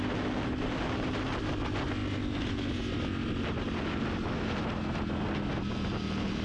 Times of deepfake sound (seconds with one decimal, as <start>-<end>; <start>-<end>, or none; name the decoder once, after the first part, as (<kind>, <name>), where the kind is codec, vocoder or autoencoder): none